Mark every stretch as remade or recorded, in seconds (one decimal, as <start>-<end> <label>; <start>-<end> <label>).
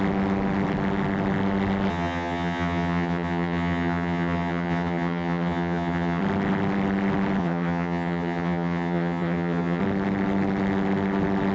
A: 0.0-1.9 recorded; 1.9-6.2 remade; 6.2-7.4 recorded; 7.4-9.8 remade; 9.8-11.5 recorded